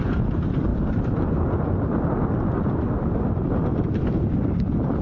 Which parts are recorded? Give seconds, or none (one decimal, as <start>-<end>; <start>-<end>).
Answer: 0.0-5.0